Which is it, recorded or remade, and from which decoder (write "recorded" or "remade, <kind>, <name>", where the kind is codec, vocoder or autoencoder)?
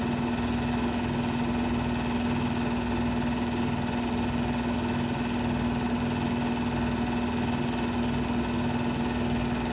recorded